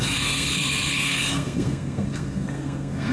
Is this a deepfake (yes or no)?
yes